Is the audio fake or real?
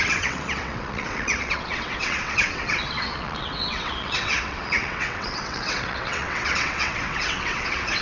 fake